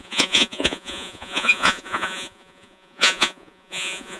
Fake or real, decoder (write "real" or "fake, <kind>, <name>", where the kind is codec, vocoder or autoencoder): fake, vocoder, Vocos